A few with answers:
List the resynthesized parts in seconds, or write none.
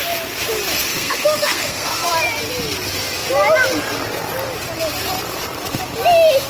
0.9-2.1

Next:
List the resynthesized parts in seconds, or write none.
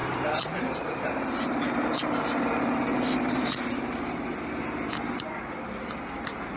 0.0-4.0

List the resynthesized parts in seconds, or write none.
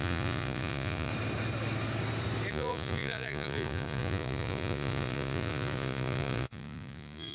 0.0-1.1; 2.5-7.3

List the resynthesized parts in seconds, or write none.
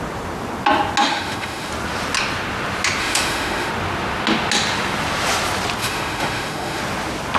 1.0-1.7; 3.0-3.7; 5.8-6.8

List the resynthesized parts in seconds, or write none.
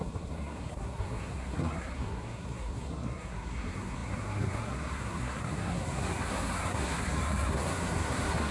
0.0-8.5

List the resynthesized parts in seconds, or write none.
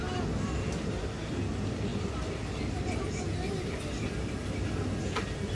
0.6-1.4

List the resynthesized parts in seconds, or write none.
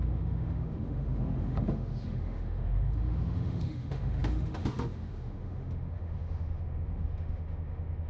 0.0-8.1